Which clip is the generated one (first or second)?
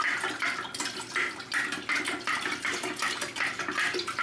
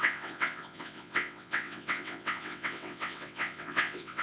second